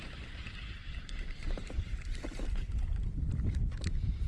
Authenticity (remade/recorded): remade